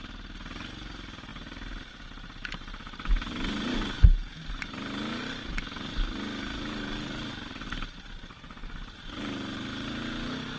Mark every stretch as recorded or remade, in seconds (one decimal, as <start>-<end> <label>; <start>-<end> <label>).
0.0-10.6 recorded

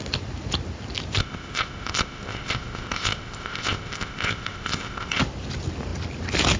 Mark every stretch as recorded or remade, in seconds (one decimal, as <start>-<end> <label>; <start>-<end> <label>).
0.0-1.2 recorded; 1.2-5.2 remade; 5.2-6.6 recorded

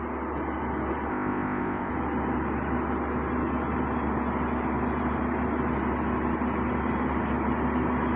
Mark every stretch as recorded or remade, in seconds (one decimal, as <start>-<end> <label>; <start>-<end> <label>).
0.0-1.1 recorded; 1.1-1.9 remade; 1.9-8.2 recorded

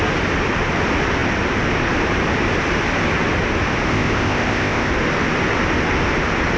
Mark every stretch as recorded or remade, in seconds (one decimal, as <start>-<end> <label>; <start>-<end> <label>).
0.0-3.9 recorded; 3.9-4.9 remade; 4.9-6.6 recorded

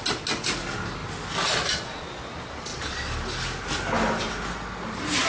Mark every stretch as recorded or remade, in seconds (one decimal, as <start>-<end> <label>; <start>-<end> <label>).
0.0-5.3 recorded

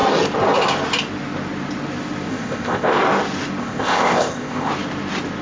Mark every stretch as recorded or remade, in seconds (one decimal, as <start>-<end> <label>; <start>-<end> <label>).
0.0-2.3 recorded; 2.3-3.0 remade; 3.0-3.6 recorded; 3.6-4.7 remade; 4.7-5.4 recorded

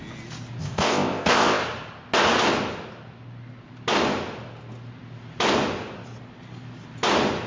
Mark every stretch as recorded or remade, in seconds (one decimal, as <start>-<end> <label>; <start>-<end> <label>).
0.0-0.6 recorded; 0.6-1.6 remade; 1.6-7.5 recorded